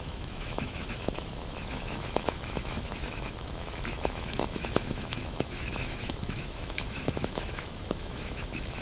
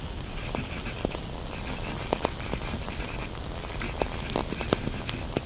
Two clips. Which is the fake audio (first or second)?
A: first